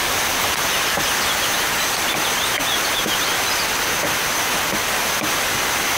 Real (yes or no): yes